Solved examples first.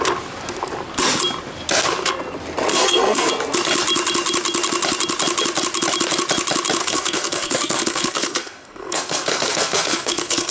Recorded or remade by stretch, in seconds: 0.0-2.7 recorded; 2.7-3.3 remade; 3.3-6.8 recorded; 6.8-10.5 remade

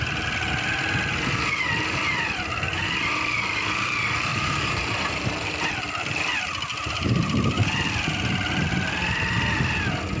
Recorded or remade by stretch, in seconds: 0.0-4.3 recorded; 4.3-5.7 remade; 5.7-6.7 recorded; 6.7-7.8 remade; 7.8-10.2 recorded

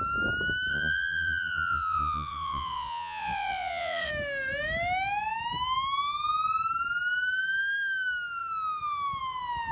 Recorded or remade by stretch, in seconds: 0.0-0.7 recorded; 0.7-4.1 remade; 4.1-9.7 recorded

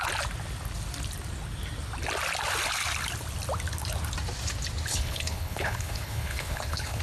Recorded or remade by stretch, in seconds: 0.0-4.9 recorded; 4.9-7.0 remade